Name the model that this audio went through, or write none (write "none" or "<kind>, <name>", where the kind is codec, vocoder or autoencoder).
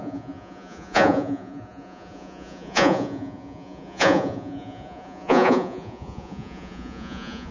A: vocoder, Vocos